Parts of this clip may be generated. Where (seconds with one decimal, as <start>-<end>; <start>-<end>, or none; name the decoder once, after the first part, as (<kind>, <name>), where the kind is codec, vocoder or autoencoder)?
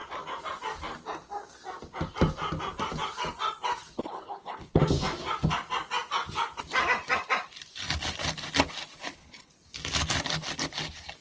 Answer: 4.0-4.8 (codec, HILCodec); 9.0-9.5